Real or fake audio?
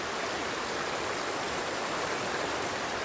real